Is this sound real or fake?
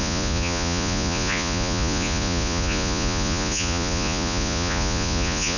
fake